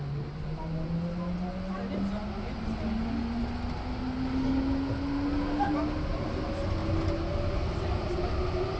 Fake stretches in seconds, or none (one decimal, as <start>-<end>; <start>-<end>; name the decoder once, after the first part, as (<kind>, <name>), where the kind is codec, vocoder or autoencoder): none